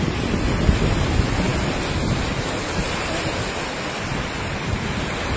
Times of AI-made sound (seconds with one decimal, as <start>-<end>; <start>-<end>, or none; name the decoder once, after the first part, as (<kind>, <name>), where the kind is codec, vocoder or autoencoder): none